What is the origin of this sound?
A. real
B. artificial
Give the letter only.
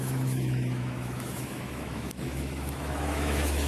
B